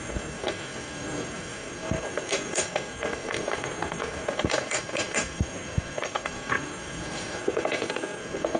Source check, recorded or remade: remade